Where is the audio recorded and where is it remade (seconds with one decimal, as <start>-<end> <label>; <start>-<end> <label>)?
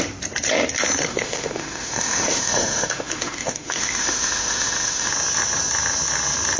0.0-1.1 recorded; 1.1-5.1 remade; 5.1-6.6 recorded